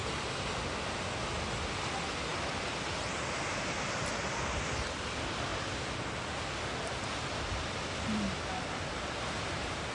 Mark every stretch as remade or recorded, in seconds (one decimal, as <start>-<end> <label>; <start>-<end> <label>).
0.0-9.9 recorded

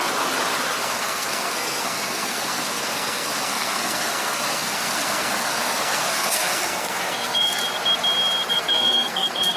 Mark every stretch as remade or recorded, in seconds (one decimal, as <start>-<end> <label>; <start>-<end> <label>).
0.0-0.8 recorded; 0.8-7.6 remade; 7.6-8.5 recorded; 8.5-9.6 remade